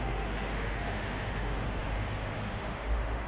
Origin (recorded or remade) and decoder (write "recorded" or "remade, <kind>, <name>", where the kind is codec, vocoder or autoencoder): remade, autoencoder, DAC-VAE